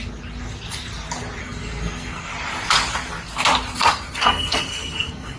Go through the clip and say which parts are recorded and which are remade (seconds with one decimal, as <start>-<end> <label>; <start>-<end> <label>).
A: 0.0-1.4 recorded; 1.4-2.3 remade; 2.3-3.8 recorded; 3.8-5.4 remade